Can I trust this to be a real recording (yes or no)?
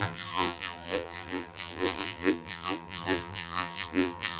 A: no